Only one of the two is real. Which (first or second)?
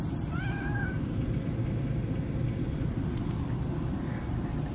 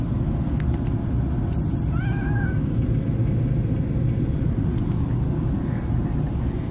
second